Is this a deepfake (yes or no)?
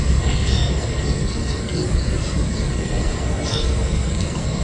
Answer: yes